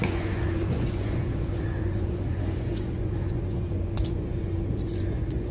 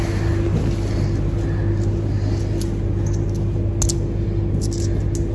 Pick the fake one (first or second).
first